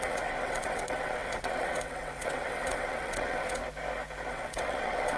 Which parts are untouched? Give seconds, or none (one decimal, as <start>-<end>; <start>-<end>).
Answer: 3.6-4.3